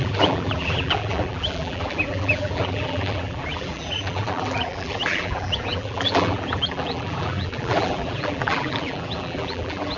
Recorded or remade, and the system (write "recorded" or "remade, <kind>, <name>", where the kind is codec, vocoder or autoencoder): remade, vocoder, BigVGAN v2